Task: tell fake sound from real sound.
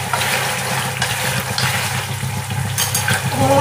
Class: real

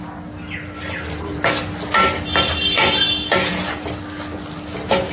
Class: real